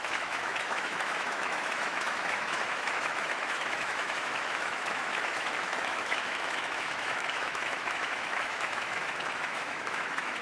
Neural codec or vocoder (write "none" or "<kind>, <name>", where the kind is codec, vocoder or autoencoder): autoencoder, DAC-VAE